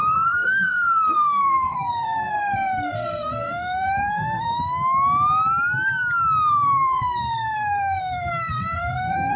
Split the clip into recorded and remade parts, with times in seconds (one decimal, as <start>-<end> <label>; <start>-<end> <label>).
0.0-4.5 remade; 4.5-6.5 recorded; 6.5-9.4 remade